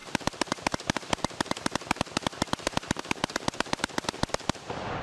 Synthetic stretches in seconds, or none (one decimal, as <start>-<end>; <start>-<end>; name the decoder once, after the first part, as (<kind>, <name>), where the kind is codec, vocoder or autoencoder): none